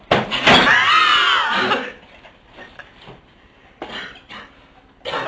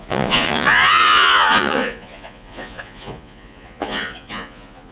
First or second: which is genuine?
first